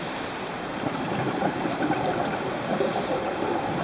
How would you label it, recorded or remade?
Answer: remade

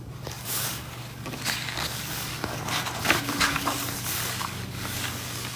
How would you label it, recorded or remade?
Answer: remade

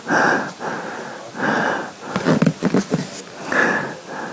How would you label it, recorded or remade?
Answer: recorded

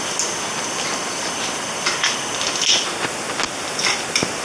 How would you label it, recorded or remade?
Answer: recorded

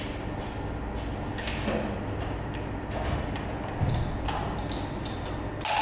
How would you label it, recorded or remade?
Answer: recorded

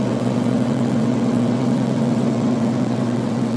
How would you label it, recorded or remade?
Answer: remade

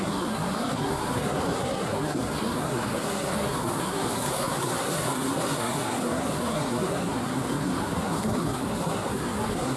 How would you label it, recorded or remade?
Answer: remade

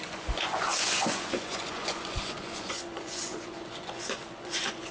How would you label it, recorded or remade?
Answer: remade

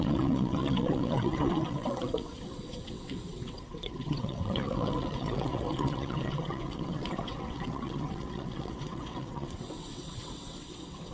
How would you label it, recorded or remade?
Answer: remade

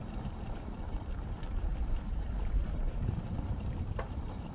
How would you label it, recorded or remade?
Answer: remade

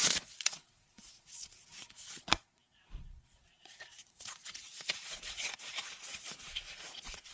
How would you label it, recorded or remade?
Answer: remade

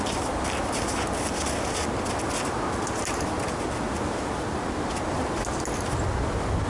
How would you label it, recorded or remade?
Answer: recorded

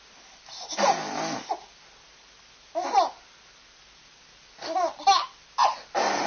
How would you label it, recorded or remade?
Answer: recorded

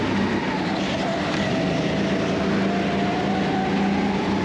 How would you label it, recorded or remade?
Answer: recorded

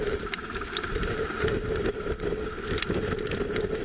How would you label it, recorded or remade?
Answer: recorded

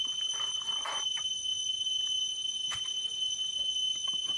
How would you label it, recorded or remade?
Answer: recorded